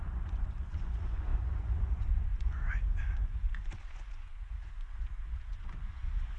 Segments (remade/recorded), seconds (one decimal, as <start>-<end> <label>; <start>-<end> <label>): 0.0-6.4 remade